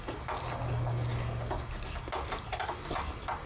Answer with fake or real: real